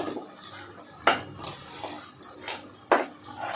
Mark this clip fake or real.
real